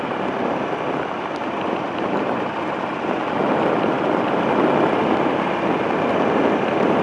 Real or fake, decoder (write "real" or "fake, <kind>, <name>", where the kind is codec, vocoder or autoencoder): real